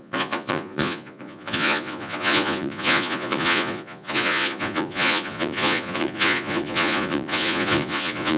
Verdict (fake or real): fake